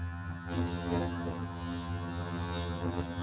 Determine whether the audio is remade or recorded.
remade